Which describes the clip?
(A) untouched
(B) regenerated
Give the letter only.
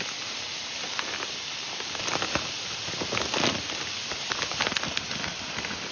A